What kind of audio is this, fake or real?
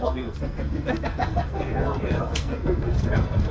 fake